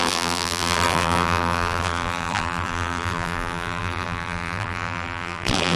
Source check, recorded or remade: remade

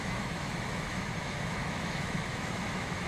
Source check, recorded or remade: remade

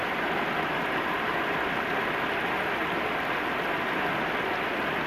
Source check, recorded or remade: recorded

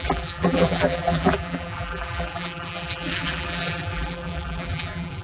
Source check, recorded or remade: remade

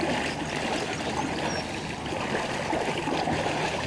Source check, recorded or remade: recorded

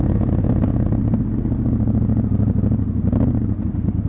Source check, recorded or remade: recorded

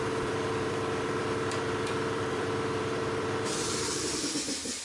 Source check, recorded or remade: remade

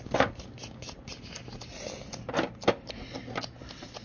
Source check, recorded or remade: recorded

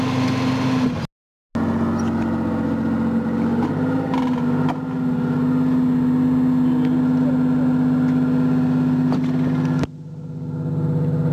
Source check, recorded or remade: recorded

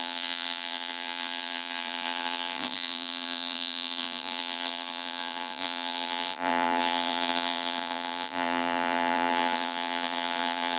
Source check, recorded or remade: remade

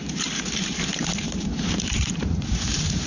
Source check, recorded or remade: remade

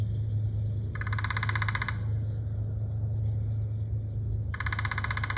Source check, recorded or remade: recorded